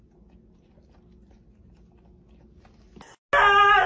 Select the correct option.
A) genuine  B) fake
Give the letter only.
A